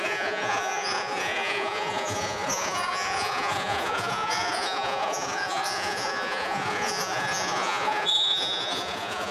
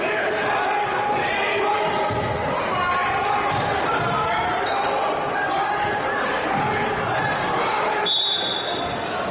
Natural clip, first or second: second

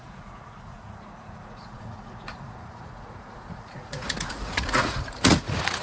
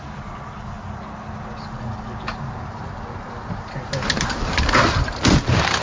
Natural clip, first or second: second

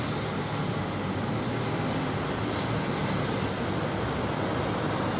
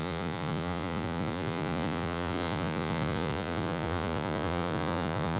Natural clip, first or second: first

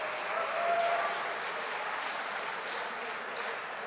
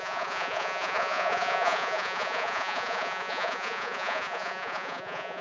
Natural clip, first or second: first